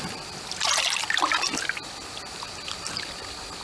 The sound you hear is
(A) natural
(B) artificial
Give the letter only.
A